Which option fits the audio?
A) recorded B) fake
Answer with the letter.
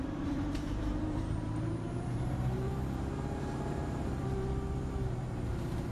B